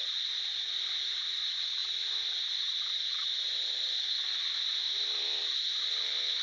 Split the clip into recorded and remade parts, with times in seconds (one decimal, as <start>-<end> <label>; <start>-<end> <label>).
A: 0.0-6.4 recorded